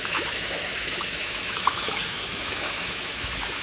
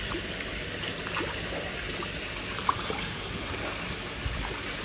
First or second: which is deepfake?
first